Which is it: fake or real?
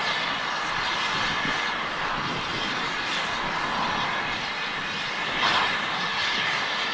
real